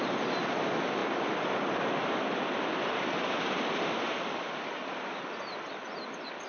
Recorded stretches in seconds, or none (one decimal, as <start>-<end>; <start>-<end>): 0.0-6.5